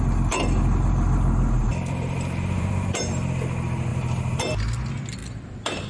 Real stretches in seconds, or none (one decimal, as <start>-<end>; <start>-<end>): 0.0-1.7; 3.0-3.9; 4.4-5.2